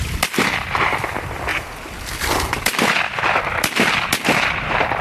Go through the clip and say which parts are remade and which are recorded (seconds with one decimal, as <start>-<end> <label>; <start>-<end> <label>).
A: 0.0-5.0 recorded

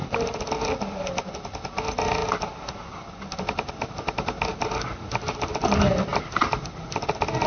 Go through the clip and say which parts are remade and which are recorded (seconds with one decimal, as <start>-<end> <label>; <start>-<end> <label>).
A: 0.0-7.5 recorded

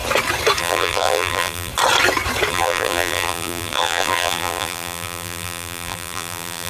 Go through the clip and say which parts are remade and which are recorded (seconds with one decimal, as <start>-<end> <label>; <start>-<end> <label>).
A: 0.0-0.6 recorded; 0.6-1.7 remade; 1.7-2.5 recorded; 2.5-6.7 remade

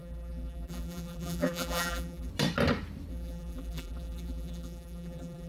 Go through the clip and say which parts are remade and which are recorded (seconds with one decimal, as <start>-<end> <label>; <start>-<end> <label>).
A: 0.0-2.3 remade; 2.3-3.1 recorded; 3.1-5.5 remade

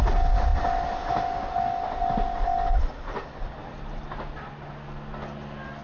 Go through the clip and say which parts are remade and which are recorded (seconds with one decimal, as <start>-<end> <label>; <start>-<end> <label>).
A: 0.0-3.6 recorded; 3.6-4.7 remade; 4.7-5.8 recorded

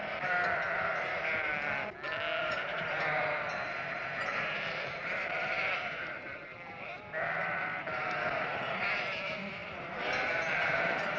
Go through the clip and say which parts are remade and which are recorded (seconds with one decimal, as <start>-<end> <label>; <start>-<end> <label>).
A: 0.0-1.5 remade; 1.5-2.4 recorded; 2.4-11.2 remade